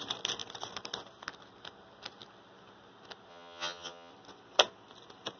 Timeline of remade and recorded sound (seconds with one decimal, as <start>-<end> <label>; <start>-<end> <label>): 0.0-3.3 recorded; 3.3-4.1 remade; 4.1-5.4 recorded